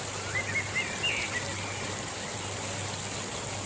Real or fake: real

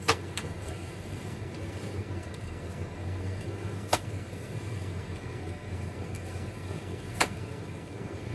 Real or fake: fake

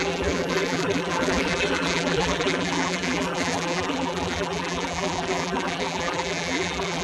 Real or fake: fake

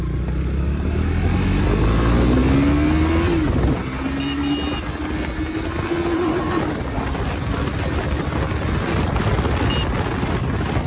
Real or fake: real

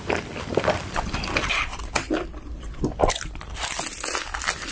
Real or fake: fake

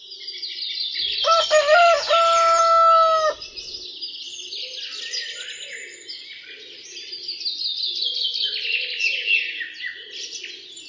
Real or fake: real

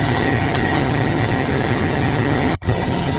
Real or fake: fake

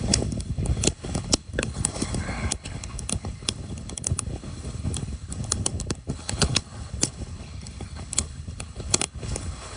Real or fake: fake